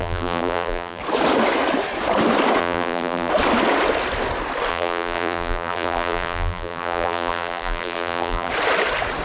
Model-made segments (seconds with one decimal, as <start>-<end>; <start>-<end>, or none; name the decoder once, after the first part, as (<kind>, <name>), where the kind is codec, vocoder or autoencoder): 0.0-1.0 (vocoder, BigVGAN v2); 2.6-3.3; 4.7-8.5